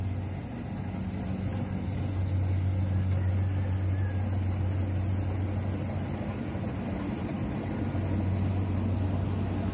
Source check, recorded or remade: recorded